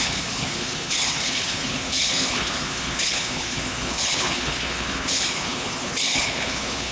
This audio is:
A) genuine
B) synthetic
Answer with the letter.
B